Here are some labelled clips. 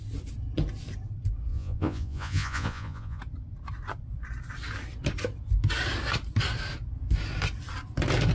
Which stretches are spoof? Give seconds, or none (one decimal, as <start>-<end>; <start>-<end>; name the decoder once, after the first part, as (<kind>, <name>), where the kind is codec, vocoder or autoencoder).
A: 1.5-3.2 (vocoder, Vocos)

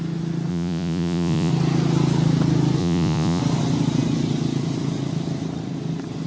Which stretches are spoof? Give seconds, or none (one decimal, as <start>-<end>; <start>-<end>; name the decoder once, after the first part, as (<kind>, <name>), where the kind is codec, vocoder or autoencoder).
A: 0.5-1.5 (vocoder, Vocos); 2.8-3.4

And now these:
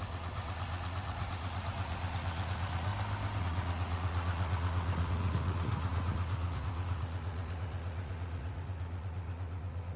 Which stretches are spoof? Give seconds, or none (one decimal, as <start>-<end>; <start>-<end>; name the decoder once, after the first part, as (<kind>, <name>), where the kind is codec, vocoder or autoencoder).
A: 0.0-2.9 (vocoder, Vocos); 3.4-10.0

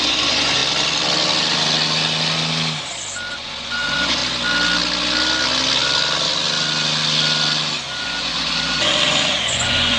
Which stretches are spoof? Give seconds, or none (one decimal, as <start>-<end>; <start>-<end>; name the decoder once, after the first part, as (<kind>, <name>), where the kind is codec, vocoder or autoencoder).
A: 0.0-0.6 (vocoder, Vocos); 3.3-4.2; 8.0-10.0

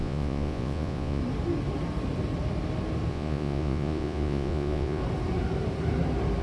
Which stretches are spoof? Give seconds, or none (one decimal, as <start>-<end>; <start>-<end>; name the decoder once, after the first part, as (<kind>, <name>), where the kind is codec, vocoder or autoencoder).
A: 0.0-1.2 (vocoder, Vocos); 3.1-5.0

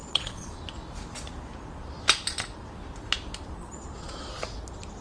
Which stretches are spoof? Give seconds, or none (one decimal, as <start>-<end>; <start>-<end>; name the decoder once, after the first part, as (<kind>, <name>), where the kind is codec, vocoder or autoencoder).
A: 0.0-0.6 (vocoder, Vocos); 3.6-4.3

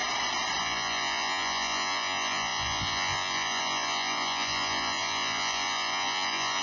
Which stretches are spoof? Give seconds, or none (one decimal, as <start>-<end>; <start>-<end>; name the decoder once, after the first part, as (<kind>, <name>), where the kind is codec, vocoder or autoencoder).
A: 0.6-6.6 (vocoder, Vocos)

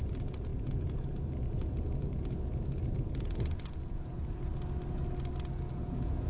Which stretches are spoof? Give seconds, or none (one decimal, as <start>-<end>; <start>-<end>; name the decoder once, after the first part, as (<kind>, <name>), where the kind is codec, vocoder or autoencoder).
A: 0.0-4.5 (vocoder, Vocos); 5.7-6.3